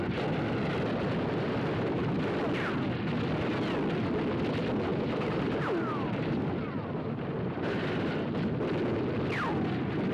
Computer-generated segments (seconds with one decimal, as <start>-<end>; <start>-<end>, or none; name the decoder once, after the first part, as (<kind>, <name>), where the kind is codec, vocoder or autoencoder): 4.9-8.1 (vocoder, BigVGAN v2)